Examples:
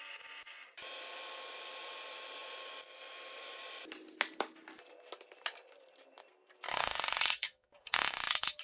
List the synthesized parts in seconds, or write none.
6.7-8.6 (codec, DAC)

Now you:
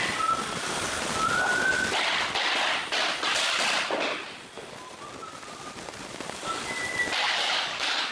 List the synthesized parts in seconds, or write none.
7.2-8.1 (codec, DAC)

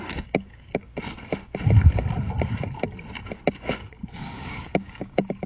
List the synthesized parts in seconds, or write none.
0.0-0.9 (codec, DAC); 3.5-5.5

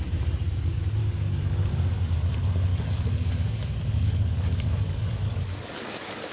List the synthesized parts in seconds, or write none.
1.0-2.1 (codec, DAC); 2.7-6.3

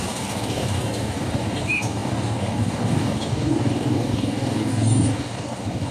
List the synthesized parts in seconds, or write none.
0.0-5.9 (codec, DAC)

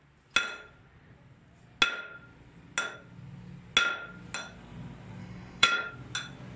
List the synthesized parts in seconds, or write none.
5.2-5.9 (codec, DAC)

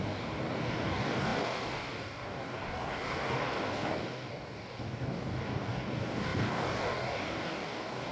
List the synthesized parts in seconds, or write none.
0.0-8.1 (codec, DAC)